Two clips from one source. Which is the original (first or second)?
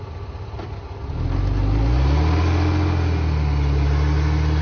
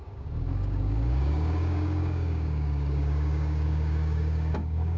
first